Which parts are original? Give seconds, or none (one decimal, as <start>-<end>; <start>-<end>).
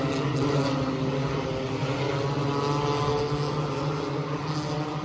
0.0-5.0